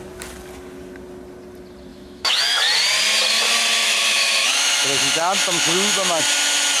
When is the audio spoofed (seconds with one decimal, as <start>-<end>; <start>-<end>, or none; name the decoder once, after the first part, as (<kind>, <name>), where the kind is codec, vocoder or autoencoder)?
1.9-2.6 (autoencoder, DAC-VAE); 3.8-6.2